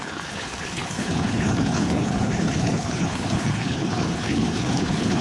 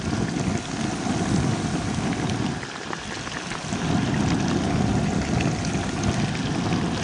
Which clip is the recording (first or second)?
second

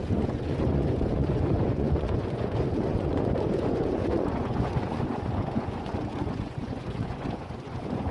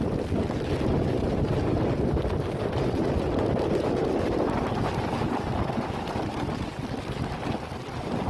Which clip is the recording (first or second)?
second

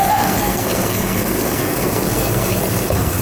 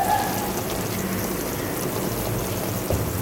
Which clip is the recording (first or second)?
second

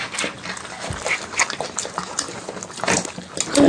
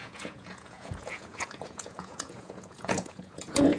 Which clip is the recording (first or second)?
first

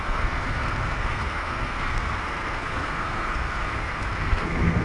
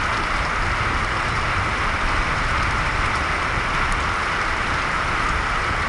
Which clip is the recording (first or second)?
second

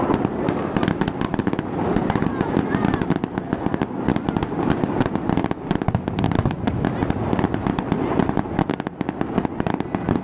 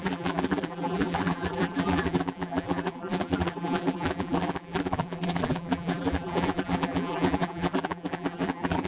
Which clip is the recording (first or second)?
first